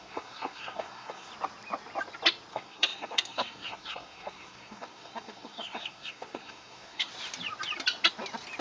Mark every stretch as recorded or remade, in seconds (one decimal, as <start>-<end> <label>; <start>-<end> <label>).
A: 0.0-1.3 remade; 1.3-2.5 recorded; 2.5-7.1 remade; 7.1-8.6 recorded